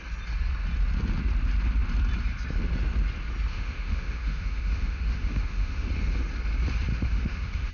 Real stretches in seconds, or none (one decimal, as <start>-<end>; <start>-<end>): 0.0-3.5; 5.9-6.9